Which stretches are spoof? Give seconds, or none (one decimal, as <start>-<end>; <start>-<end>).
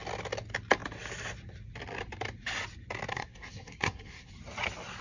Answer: 3.1-4.3